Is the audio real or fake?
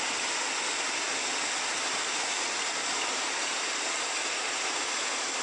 real